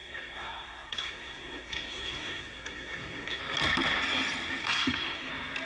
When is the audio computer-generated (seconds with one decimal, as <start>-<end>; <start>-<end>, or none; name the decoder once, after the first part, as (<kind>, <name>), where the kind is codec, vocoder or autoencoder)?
0.0-3.4 (codec, SNAC); 4.6-5.3